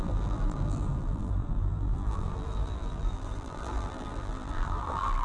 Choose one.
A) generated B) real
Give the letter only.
A